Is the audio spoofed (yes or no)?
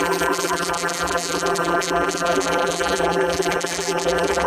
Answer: yes